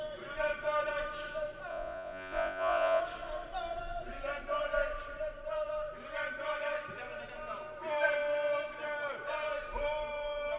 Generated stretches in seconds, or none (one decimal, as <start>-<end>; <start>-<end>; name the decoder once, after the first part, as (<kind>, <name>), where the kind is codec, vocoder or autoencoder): 1.7-3.0 (vocoder, Vocos)